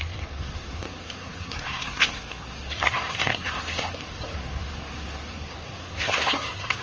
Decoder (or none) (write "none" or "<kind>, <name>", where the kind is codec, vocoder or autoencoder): codec, SNAC